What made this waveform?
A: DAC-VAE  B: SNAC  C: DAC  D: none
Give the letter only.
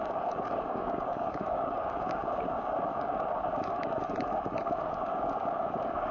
C